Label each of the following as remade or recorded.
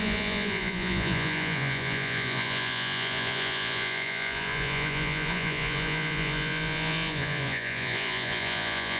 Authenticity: remade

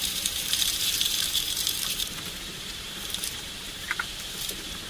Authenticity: remade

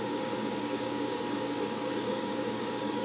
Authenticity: remade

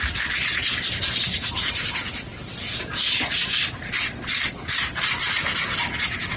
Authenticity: recorded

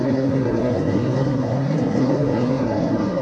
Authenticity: remade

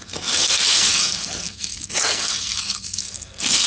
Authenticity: remade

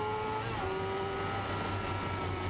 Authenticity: recorded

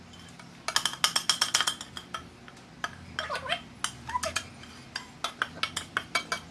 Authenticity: recorded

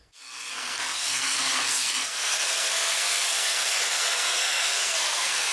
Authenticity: remade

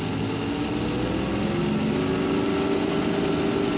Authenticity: recorded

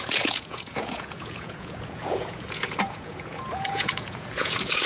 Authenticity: remade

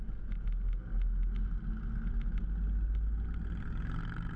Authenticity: recorded